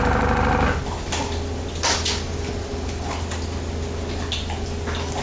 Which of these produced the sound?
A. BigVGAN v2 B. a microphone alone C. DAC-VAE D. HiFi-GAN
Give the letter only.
B